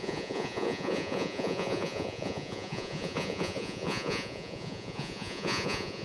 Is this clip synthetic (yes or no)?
yes